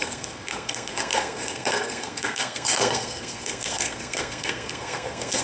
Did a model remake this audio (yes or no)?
yes